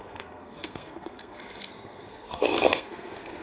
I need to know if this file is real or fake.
fake